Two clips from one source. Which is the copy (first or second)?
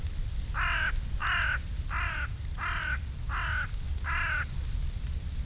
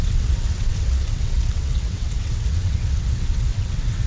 second